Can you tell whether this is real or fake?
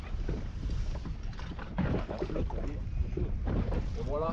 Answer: fake